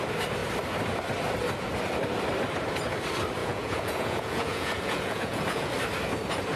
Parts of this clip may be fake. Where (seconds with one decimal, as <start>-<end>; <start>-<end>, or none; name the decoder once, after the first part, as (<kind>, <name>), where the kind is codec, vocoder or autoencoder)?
3.4-5.7 (vocoder, Vocos)